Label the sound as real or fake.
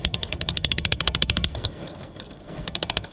fake